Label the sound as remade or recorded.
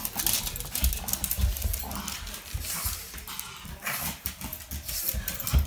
recorded